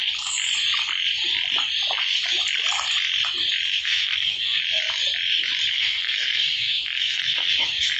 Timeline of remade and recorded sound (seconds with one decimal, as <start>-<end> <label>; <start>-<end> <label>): 0.0-3.8 recorded; 3.8-4.6 remade; 4.6-5.7 recorded; 5.7-8.0 remade